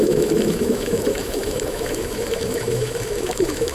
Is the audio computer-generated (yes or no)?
yes